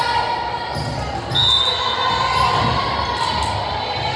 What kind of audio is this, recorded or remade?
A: recorded